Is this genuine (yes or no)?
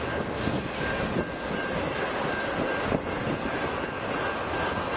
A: yes